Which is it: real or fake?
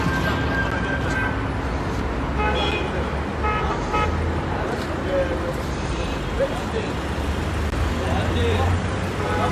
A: real